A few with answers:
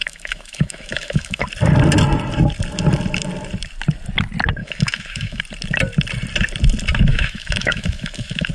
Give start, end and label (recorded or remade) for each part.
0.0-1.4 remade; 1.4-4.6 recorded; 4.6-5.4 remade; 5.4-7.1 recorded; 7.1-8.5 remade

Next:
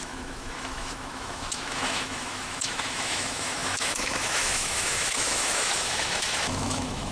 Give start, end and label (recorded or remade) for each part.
0.0-7.1 remade